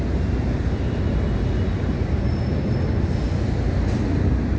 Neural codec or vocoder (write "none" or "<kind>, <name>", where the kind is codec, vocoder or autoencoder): none